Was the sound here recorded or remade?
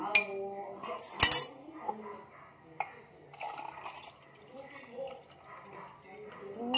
recorded